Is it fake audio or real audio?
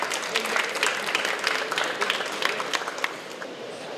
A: real